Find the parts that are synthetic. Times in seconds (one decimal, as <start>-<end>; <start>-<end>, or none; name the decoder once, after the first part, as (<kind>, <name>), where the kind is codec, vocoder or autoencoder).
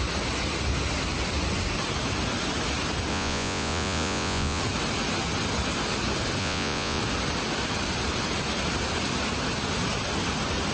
3.1-4.6 (vocoder, Vocos); 6.4-7.0